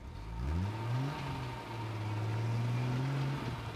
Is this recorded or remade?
recorded